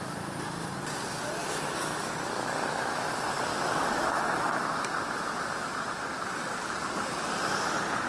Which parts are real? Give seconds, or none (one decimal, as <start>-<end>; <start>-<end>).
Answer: 0.0-1.4; 3.1-3.5; 4.6-8.1